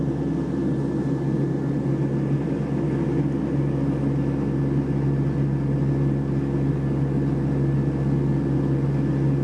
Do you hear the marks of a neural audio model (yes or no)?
no